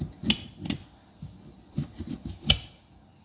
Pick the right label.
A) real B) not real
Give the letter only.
A